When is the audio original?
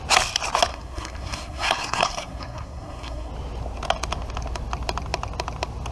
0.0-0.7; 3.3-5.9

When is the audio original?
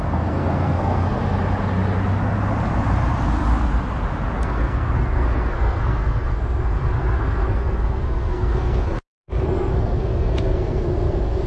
1.2-4.4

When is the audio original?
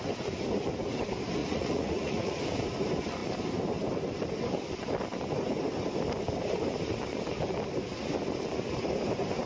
0.0-1.4; 2.4-9.5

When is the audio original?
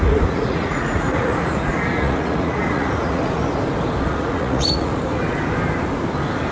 3.4-4.1; 5.2-6.5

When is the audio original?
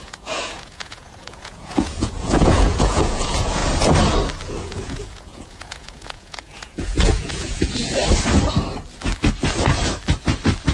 3.6-4.5; 8.0-10.7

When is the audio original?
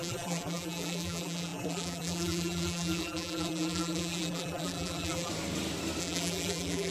5.3-6.0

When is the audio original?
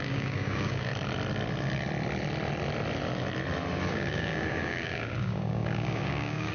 0.9-3.9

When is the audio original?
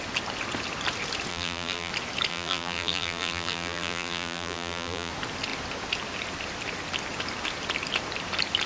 0.0-1.3; 1.9-2.3; 5.1-8.7